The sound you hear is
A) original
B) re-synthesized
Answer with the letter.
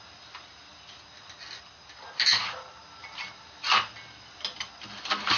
A